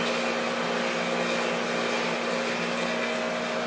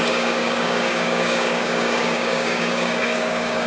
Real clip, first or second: first